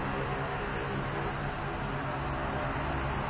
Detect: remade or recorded recorded